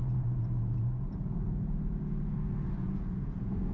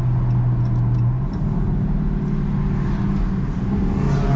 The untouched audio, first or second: second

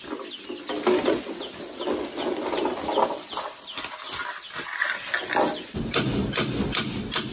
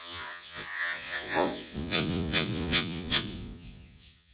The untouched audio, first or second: first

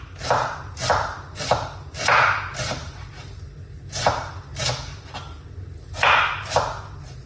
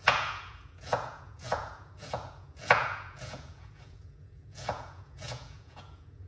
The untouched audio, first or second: first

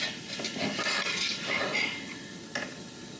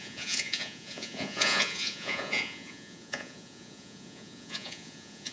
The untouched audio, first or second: first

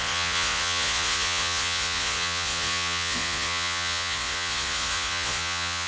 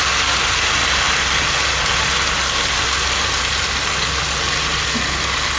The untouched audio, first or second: second